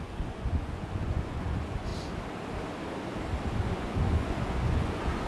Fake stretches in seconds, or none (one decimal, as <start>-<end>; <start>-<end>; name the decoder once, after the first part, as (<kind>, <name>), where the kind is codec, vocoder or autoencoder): 0.0-1.9 (vocoder, Vocos); 3.6-5.3